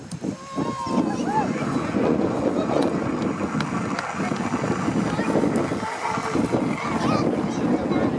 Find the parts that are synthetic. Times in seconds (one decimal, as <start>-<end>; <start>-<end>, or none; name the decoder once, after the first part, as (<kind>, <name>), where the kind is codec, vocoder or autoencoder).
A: 1.2-2.9 (vocoder, Vocos)